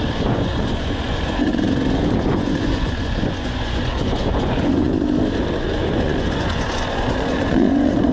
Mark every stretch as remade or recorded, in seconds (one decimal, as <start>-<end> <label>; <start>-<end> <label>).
0.0-4.9 remade; 4.9-5.5 recorded; 5.5-8.1 remade